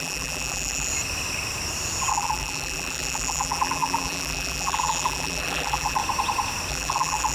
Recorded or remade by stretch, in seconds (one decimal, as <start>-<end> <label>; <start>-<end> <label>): 0.0-0.9 remade; 0.9-2.1 recorded; 2.1-6.0 remade; 6.0-6.7 recorded; 6.7-7.3 remade